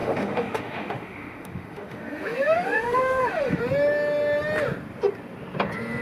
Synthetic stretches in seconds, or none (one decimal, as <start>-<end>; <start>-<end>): 0.0-3.6